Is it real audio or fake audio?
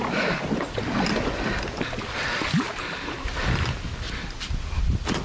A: real